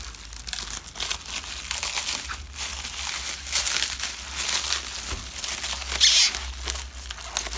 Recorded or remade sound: recorded